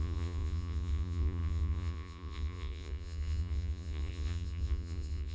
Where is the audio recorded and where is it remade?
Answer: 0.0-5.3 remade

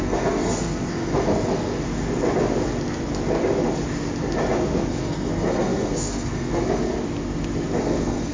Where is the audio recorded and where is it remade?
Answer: 0.0-1.7 remade; 1.7-4.9 recorded; 4.9-7.0 remade; 7.0-7.8 recorded; 7.8-8.3 remade

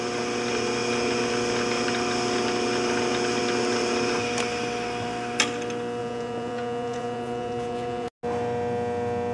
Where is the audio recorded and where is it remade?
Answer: 0.0-6.0 recorded; 6.0-8.1 remade; 8.1-9.3 recorded

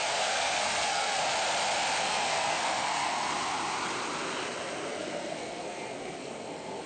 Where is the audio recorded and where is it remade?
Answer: 0.0-1.2 remade; 1.2-2.0 recorded; 2.0-3.3 remade; 3.3-4.9 recorded; 4.9-6.9 remade